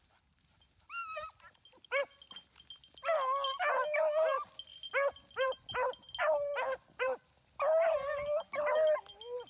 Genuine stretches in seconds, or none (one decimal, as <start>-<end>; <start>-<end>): 0.0-9.5